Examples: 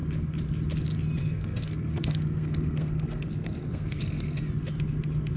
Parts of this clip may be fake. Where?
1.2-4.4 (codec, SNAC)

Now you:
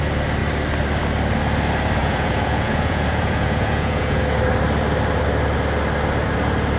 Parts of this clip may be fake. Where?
2.0-4.2 (vocoder, Vocos)

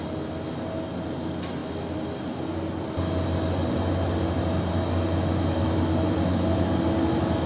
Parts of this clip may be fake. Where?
none

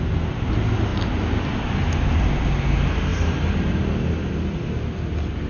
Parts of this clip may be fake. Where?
none